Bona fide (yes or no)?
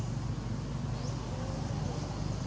yes